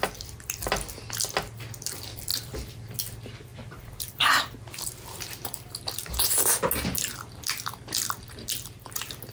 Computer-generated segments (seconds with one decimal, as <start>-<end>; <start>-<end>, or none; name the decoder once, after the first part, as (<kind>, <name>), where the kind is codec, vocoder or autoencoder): 2.3-3.0 (vocoder, BigVGAN v2); 3.5-5.5